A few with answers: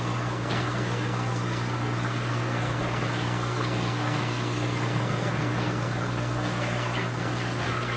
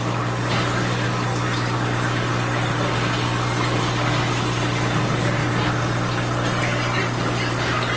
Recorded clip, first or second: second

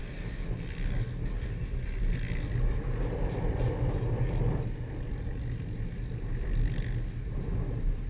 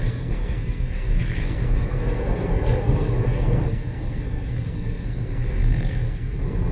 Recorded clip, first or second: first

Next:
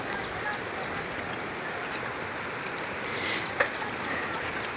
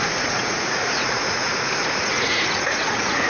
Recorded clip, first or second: first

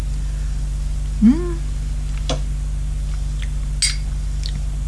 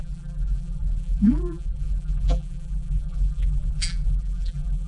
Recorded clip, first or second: first